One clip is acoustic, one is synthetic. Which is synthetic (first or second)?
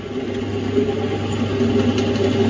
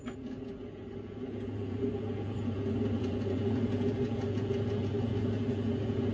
second